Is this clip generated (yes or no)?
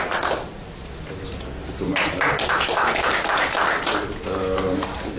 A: no